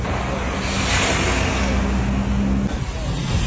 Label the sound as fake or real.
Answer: real